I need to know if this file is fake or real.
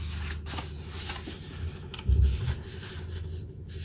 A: real